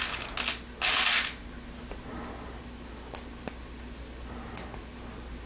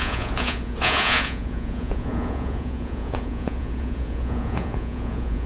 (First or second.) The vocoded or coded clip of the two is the second